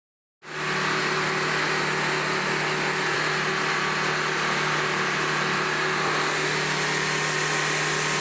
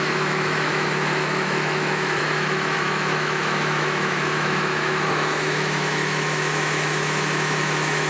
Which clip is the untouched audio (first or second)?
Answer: first